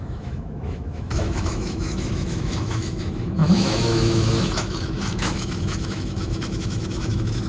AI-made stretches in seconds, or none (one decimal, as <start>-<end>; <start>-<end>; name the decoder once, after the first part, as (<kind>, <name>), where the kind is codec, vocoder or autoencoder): 0.0-7.5 (autoencoder, DAC-VAE)